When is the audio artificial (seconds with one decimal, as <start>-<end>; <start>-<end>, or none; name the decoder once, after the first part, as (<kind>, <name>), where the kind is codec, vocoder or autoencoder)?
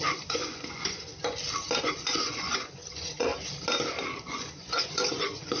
0.0-1.1 (vocoder, Vocos); 1.8-3.3; 4.3-5.6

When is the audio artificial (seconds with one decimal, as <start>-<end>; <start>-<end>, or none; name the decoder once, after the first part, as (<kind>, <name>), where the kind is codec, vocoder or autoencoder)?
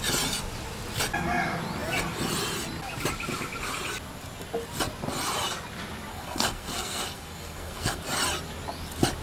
6.1-8.0 (codec, SNAC)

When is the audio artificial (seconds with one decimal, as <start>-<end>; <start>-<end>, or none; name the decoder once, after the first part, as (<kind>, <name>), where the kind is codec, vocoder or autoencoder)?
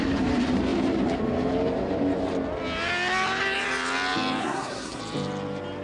4.4-5.0 (codec, SNAC)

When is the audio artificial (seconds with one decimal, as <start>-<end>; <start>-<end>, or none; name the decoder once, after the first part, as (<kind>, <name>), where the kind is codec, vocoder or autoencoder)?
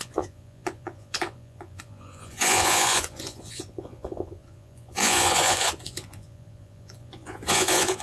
0.0-8.0 (vocoder, Vocos)